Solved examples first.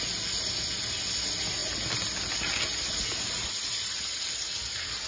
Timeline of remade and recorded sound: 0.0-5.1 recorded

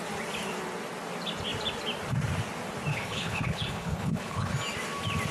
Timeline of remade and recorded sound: 0.0-2.9 recorded; 2.9-4.5 remade; 4.5-5.3 recorded

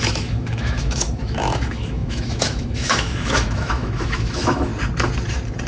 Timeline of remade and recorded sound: 0.0-4.7 remade; 4.7-5.7 recorded

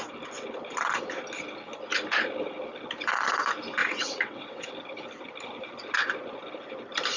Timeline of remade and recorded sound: 0.0-3.8 recorded; 3.8-4.7 remade; 4.7-7.2 recorded

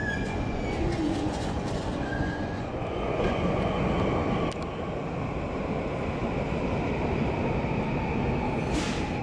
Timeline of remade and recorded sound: 0.0-3.8 remade; 3.8-9.2 recorded

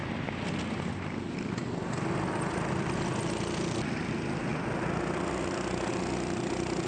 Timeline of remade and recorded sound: 0.0-6.9 recorded